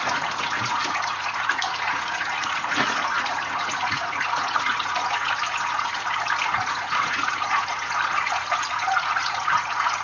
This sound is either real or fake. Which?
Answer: fake